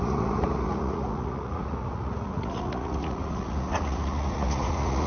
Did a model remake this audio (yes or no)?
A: yes